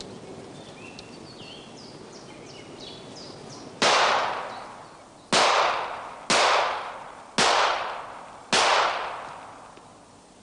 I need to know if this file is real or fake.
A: real